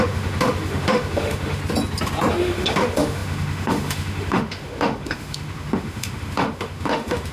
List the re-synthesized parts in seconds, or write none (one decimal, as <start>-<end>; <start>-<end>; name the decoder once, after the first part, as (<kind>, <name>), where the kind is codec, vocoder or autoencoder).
0.0-1.6 (autoencoder, DAC-VAE); 2.3-7.3